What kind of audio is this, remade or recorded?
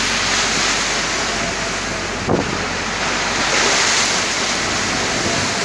recorded